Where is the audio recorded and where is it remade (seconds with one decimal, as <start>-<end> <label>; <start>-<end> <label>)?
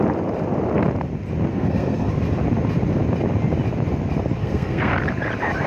0.0-1.5 recorded; 1.5-2.1 remade; 2.1-4.4 recorded; 4.4-4.9 remade; 4.9-5.7 recorded